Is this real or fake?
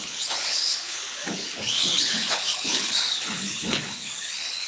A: fake